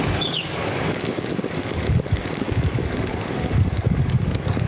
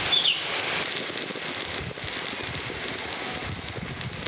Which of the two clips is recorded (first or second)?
second